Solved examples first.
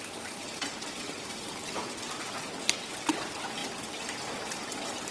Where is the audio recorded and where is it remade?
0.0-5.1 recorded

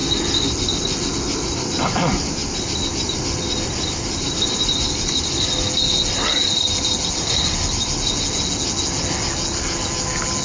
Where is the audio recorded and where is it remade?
0.0-10.4 recorded

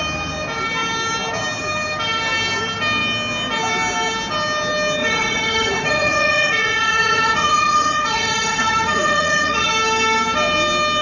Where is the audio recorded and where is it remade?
0.0-5.0 recorded; 5.0-9.7 remade; 9.7-11.0 recorded

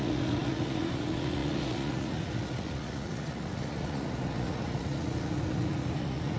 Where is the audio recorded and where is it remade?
0.0-6.4 remade

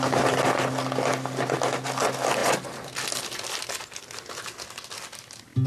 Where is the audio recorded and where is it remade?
0.0-5.7 recorded